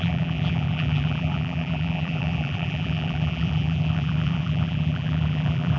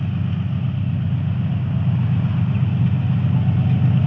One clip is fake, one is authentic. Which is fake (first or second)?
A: first